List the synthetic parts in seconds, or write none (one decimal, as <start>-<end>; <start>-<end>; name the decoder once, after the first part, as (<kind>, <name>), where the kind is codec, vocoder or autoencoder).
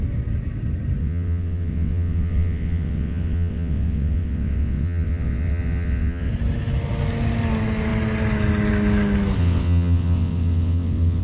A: 1.0-6.3 (vocoder, WaveNeXt); 9.4-11.2